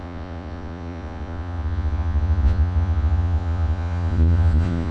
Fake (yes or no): yes